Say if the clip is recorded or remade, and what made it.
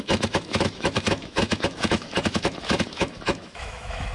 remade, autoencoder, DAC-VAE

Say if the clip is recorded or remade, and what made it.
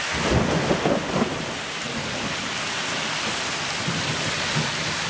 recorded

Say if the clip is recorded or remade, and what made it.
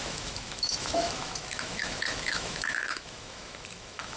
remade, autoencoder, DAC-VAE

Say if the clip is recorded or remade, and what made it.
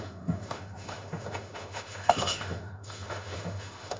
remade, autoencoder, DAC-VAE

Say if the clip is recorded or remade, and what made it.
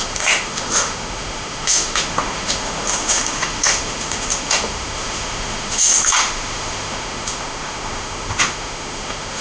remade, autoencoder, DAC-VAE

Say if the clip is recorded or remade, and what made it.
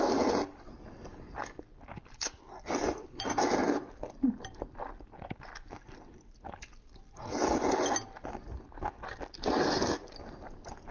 recorded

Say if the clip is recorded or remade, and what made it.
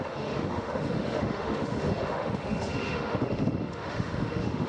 remade, autoencoder, DAC-VAE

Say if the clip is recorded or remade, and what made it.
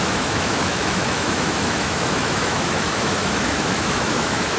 remade, autoencoder, DAC-VAE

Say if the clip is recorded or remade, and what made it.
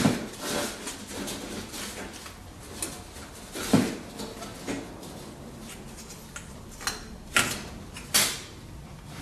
recorded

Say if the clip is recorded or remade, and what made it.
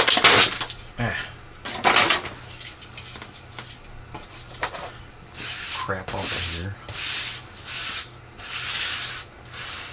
recorded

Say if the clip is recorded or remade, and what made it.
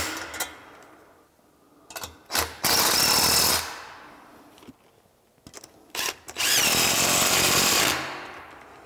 recorded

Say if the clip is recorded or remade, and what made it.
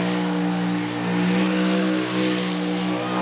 recorded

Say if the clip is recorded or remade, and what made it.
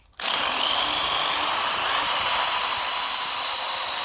recorded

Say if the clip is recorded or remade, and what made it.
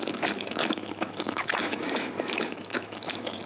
remade, autoencoder, DAC-VAE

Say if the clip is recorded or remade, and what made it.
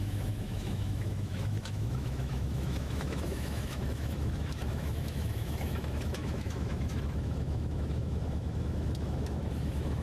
remade, autoencoder, DAC-VAE